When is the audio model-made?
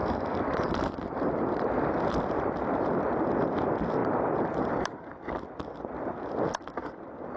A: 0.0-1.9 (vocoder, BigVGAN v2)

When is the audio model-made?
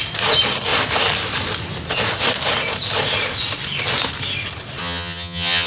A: 4.8-5.7 (vocoder, HiFi-GAN)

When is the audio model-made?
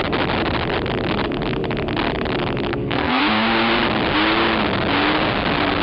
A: 2.7-3.2 (codec, SNAC)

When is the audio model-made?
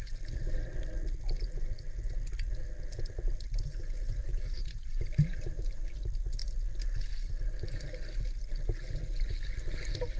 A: 4.2-5.9 (vocoder, BigVGAN v2)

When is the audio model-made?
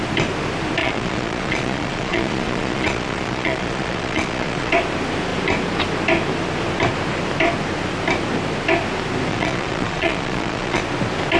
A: 0.8-4.7 (vocoder, Vocos); 9.3-10.8